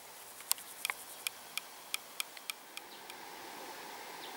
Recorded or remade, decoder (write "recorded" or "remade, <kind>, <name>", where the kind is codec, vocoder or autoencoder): recorded